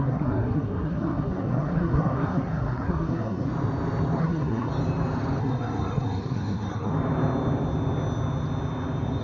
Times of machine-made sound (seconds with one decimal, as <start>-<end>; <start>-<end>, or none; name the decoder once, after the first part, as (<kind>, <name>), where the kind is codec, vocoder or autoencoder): 0.0-3.5 (codec, SNAC); 4.2-4.7; 5.4-6.9